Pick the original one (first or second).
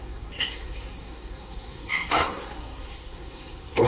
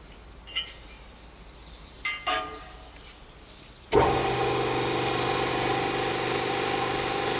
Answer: second